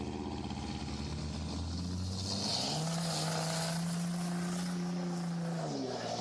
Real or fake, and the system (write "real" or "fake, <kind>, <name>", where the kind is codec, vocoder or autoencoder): real